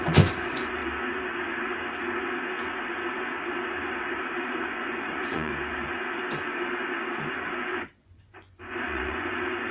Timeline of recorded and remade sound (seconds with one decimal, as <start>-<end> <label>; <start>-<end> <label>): 0.0-0.8 remade; 0.8-4.4 recorded; 4.4-5.5 remade; 5.5-8.0 recorded; 8.0-9.7 remade